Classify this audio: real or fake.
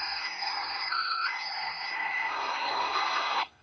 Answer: fake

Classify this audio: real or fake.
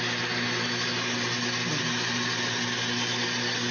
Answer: real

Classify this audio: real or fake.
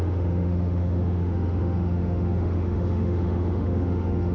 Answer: fake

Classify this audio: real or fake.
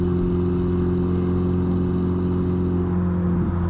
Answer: real